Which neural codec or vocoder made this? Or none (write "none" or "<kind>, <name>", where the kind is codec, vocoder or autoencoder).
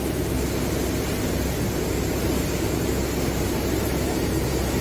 none